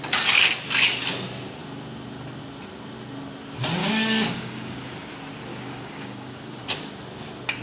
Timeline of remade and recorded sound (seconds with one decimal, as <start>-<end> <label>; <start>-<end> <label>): 0.0-3.8 recorded; 3.8-5.1 remade; 5.1-5.5 recorded; 5.5-6.6 remade; 6.6-7.6 recorded

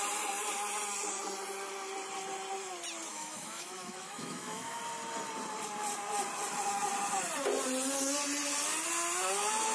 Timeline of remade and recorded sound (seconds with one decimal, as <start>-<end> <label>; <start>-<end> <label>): 0.0-3.1 recorded; 3.1-4.8 remade; 4.8-9.7 recorded